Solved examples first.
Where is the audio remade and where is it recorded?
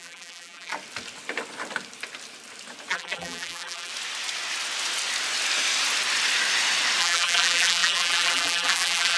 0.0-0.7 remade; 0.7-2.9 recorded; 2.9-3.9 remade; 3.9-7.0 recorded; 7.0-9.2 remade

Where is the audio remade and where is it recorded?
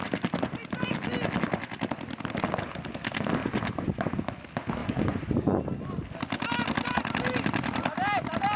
0.0-3.4 recorded; 3.4-4.1 remade; 4.1-4.8 recorded; 4.8-5.6 remade; 5.6-8.6 recorded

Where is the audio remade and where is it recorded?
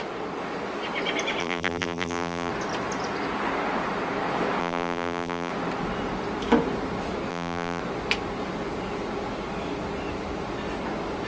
0.0-1.4 recorded; 1.4-2.5 remade; 2.5-4.6 recorded; 4.6-5.5 remade; 5.5-7.3 recorded; 7.3-7.8 remade; 7.8-11.3 recorded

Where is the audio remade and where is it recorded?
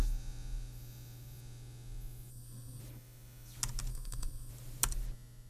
0.0-2.3 recorded; 2.3-2.8 remade; 2.8-3.9 recorded; 3.9-4.5 remade; 4.5-5.5 recorded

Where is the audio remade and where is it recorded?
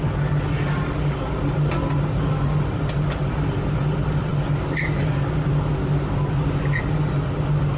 0.0-7.8 recorded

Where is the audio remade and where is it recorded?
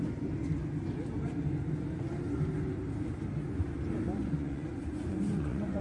0.0-4.2 recorded; 4.2-5.8 remade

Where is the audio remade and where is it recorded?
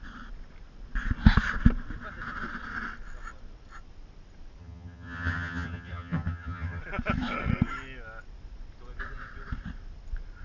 0.0-4.6 recorded; 4.6-6.8 remade; 6.8-10.4 recorded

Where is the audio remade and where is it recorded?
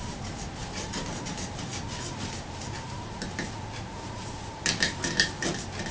0.0-5.9 recorded